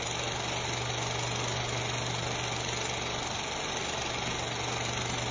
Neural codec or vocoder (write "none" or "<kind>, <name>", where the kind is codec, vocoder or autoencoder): none